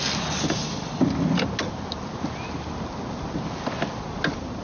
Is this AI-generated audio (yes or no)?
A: no